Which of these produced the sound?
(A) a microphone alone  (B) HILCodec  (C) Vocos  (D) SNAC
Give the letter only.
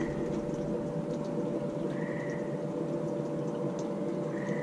A